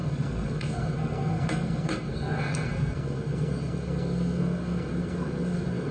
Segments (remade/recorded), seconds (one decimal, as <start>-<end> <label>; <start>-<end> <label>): 0.0-5.9 remade